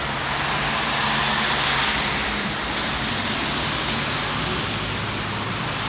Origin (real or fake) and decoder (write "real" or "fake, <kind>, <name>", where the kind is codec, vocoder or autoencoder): real